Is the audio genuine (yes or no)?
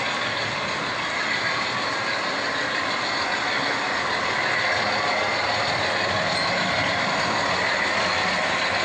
yes